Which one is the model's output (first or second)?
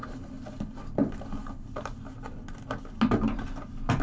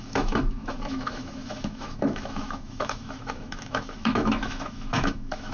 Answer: second